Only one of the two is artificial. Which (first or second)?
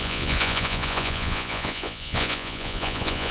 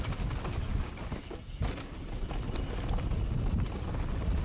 first